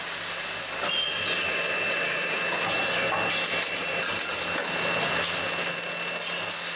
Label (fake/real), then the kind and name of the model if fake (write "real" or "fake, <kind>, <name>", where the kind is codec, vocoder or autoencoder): real